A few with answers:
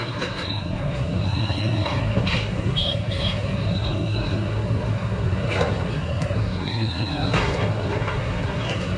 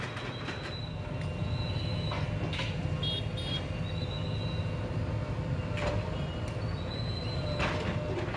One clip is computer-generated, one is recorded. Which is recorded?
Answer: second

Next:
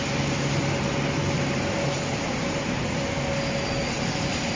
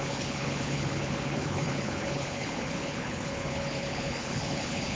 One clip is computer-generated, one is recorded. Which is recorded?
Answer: first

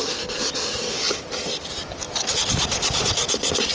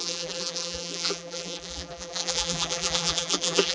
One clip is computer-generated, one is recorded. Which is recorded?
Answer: first